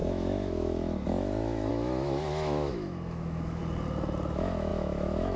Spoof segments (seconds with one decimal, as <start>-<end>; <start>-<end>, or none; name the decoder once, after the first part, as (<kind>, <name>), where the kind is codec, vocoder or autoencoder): 0.0-3.6 (autoencoder, DAC-VAE); 4.3-5.4